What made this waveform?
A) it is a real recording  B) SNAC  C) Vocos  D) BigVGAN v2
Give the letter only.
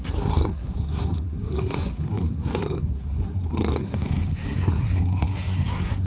B